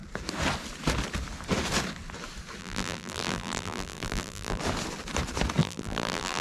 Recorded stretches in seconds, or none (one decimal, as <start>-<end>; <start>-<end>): 0.0-2.6; 4.6-5.6